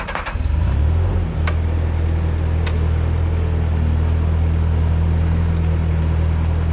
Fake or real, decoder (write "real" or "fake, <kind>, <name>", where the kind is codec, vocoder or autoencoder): real